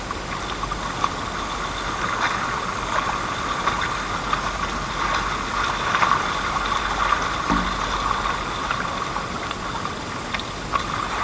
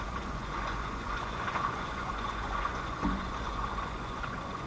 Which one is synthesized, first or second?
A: second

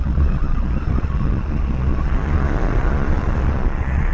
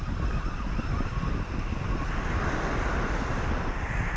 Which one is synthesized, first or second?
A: first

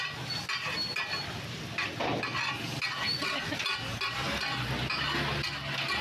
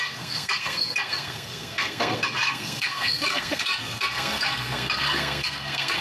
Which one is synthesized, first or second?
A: second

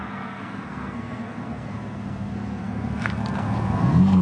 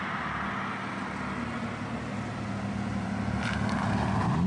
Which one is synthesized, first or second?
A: first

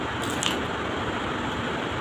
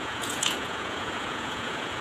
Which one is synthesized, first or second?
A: second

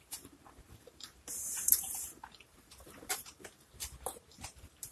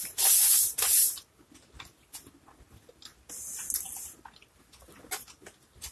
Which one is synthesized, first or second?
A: first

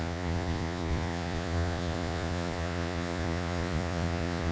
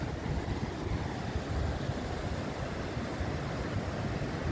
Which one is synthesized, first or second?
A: first